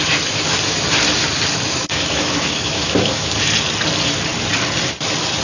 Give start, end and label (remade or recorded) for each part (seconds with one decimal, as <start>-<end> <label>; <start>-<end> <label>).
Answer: 0.0-1.7 recorded; 1.7-3.3 remade; 3.3-5.4 recorded